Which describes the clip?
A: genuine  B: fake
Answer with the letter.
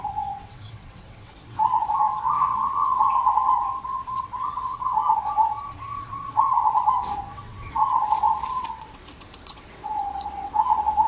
B